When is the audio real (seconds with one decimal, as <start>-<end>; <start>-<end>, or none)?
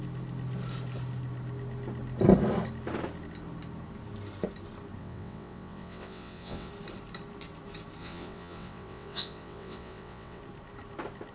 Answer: 0.0-5.0; 6.7-8.0; 10.4-11.3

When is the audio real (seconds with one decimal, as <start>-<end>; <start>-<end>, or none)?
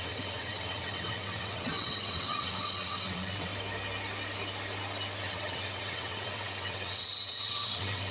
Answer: 3.5-5.2